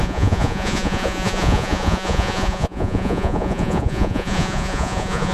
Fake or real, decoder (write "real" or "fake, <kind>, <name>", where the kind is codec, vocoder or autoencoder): fake, vocoder, Vocos